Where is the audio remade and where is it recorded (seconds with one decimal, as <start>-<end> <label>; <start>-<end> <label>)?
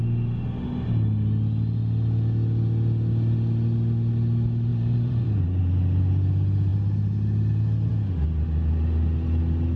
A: 0.0-4.7 recorded; 4.7-5.6 remade; 5.6-9.8 recorded